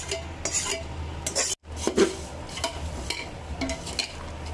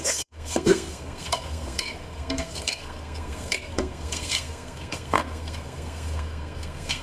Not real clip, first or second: second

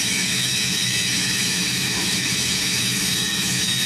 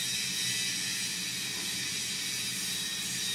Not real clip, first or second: first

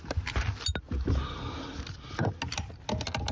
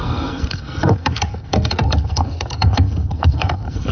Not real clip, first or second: second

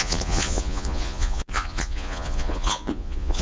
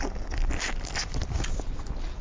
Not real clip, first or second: first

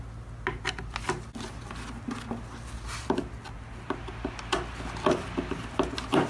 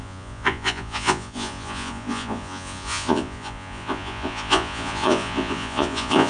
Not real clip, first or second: second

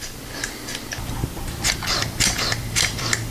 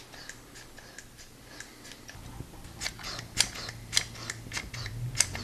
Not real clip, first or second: first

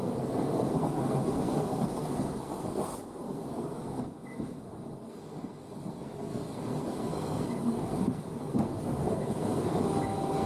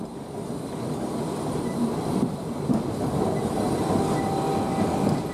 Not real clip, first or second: first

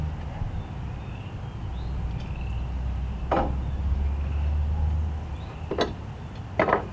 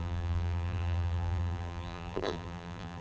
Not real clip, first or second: second